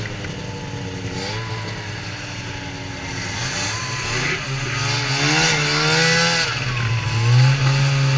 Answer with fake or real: real